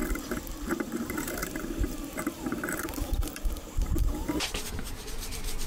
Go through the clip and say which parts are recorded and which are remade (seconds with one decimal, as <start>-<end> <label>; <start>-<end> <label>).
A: 0.0-0.7 recorded; 0.7-5.7 remade